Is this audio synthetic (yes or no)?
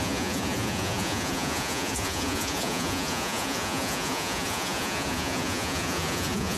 yes